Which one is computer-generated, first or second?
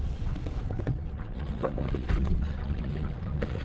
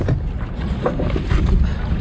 first